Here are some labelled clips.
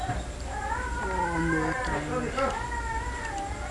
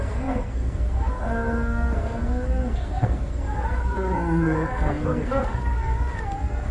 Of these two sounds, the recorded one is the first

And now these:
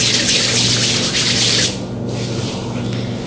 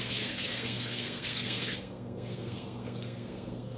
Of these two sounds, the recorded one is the first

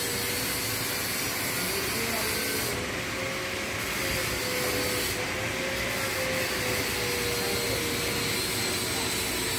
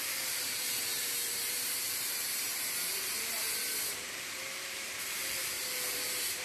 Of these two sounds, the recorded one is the first